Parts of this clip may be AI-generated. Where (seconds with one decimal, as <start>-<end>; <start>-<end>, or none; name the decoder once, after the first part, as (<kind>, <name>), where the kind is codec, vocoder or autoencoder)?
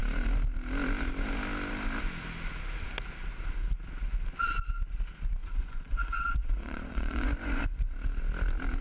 5.4-7.6 (vocoder, Vocos)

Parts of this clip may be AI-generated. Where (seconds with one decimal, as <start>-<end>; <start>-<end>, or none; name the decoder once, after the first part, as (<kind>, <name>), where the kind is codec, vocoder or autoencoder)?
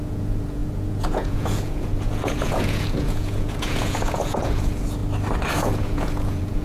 0.0-5.0 (vocoder, Vocos); 5.6-6.6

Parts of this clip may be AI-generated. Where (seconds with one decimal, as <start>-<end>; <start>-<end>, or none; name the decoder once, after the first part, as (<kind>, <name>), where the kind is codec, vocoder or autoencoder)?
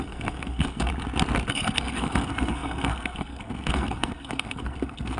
0.0-0.9 (codec, SNAC); 1.5-5.2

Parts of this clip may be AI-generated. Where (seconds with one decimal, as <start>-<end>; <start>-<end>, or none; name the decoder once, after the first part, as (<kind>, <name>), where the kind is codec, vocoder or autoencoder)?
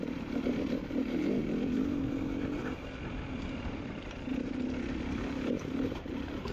0.0-1.4 (vocoder, BigVGAN v2); 2.1-4.3; 5.0-6.5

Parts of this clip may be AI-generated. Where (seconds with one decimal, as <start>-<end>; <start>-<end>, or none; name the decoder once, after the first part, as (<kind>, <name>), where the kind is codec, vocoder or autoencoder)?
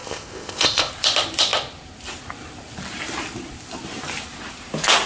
0.0-0.9 (codec, ZipCodec)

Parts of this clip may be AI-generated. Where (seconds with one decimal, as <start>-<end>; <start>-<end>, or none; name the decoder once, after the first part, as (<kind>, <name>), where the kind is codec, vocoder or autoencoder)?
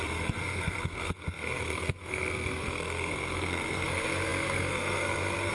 0.0-5.5 (codec, SNAC)